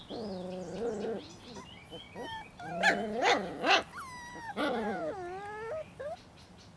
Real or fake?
real